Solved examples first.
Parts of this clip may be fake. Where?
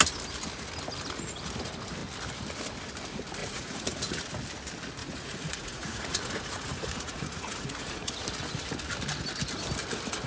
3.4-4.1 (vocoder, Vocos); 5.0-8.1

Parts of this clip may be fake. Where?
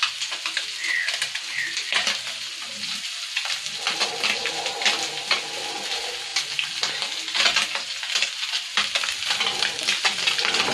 none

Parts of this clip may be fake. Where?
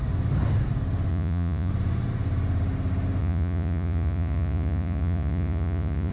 1.1-1.7 (vocoder, Vocos); 3.2-6.1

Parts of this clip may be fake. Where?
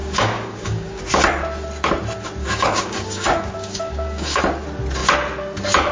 0.0-1.0 (codec, DAC); 2.4-4.4